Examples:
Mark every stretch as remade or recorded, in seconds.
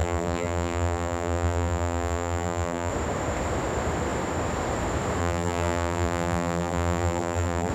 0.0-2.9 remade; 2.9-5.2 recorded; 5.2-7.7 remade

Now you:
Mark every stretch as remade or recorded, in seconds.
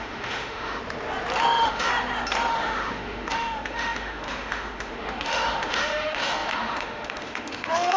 0.0-0.8 remade; 0.8-1.4 recorded; 1.4-1.9 remade; 1.9-2.5 recorded; 2.5-8.0 remade